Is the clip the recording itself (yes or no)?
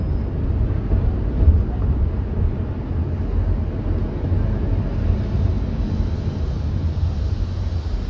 yes